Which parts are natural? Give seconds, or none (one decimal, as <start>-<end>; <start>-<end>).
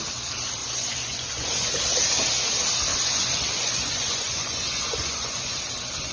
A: 0.0-0.6; 1.8-2.9; 5.6-6.1